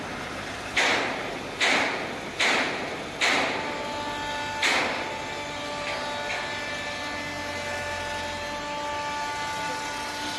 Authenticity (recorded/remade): recorded